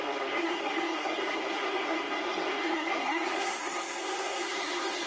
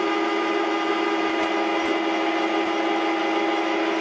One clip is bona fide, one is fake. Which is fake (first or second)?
first